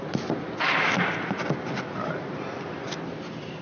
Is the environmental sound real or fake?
real